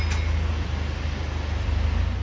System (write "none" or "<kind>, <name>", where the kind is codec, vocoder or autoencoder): none